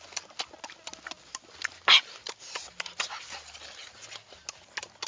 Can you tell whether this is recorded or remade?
recorded